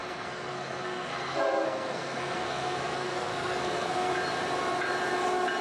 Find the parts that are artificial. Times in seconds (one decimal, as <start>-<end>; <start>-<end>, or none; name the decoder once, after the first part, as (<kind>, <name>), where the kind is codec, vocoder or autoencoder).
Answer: 0.0-4.1 (codec, SNAC)